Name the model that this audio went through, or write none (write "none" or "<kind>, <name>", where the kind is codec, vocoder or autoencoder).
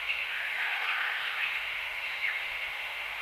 autoencoder, DAC-VAE